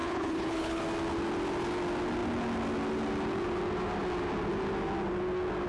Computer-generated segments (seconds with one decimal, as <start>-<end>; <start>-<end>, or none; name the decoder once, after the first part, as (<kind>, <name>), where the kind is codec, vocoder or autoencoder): 0.0-0.8 (codec, HILCodec)